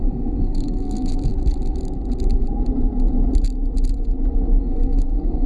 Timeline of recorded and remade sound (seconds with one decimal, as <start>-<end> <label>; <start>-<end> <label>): 0.0-1.3 remade; 1.3-4.6 recorded; 4.6-5.5 remade